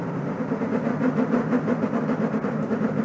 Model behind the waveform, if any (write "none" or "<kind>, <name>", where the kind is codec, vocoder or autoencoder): vocoder, BigVGAN v2